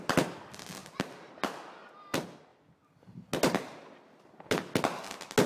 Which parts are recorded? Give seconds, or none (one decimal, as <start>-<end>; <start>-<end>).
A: 0.0-5.5